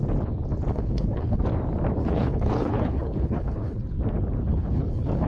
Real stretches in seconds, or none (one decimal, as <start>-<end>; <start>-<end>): 0.0-0.7; 1.4-2.0; 3.8-4.5